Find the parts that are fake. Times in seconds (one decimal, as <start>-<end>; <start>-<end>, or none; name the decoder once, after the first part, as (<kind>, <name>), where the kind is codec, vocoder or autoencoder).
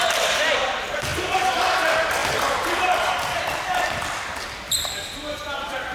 0.0-1.1 (vocoder, BigVGAN v2); 1.6-5.9